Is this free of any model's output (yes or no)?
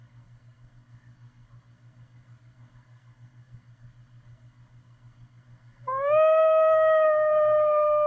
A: no